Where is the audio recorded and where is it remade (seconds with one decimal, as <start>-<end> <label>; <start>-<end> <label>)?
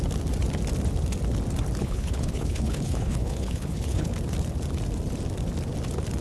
0.0-1.8 recorded; 1.8-4.1 remade; 4.1-6.2 recorded